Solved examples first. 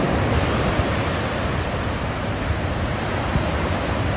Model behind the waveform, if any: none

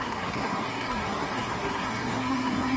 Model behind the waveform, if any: codec, SNAC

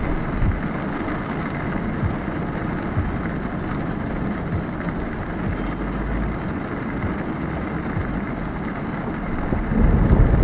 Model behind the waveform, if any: none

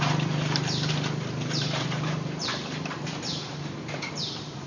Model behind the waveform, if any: vocoder, BigVGAN v2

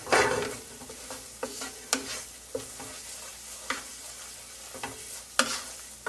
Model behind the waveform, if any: none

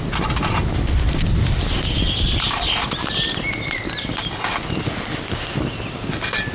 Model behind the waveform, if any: none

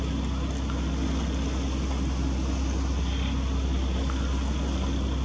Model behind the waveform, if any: none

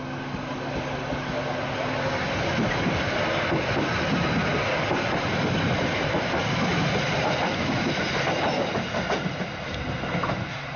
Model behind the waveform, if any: none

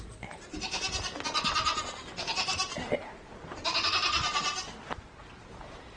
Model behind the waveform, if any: none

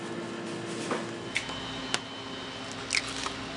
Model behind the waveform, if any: none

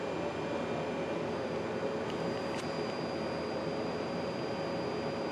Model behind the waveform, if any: none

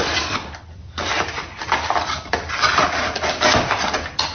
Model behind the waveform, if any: vocoder, BigVGAN v2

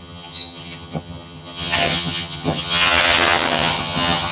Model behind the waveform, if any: vocoder, HiFi-GAN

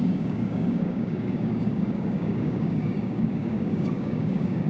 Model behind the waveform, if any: codec, DAC